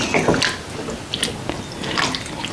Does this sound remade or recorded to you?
recorded